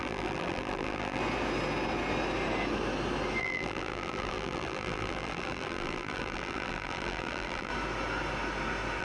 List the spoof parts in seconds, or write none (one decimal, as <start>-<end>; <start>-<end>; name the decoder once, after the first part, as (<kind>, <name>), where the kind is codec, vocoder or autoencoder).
0.0-1.2 (vocoder, BigVGAN v2); 3.4-7.7

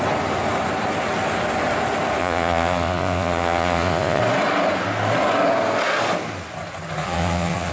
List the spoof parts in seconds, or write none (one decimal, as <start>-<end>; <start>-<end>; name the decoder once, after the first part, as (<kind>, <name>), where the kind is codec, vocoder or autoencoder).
2.2-4.2 (vocoder, Vocos); 7.0-7.7

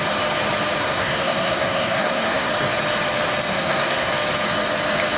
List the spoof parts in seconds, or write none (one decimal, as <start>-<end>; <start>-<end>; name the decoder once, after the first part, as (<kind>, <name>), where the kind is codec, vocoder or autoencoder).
0.8-2.5 (codec, SNAC); 3.5-4.1

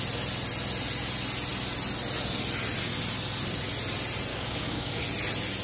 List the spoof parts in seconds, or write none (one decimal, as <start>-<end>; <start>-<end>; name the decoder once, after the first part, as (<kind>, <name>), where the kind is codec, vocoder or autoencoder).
4.3-5.0 (codec, DAC)

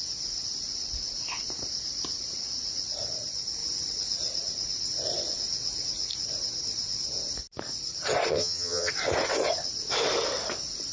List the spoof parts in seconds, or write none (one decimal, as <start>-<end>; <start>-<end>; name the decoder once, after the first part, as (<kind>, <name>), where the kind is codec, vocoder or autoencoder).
8.3-8.9 (vocoder, HiFi-GAN)